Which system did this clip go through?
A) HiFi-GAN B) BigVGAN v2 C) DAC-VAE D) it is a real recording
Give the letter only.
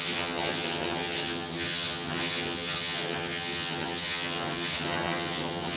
A